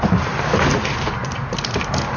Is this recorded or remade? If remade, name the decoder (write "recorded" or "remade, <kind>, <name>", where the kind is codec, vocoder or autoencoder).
recorded